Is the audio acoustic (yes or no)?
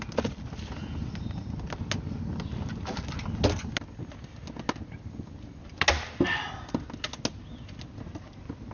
yes